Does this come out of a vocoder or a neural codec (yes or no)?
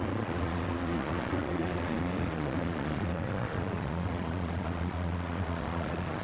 yes